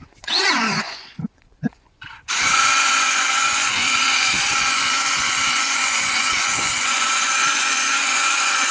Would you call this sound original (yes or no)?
no